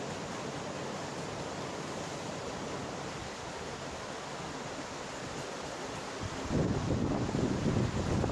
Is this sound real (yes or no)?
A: yes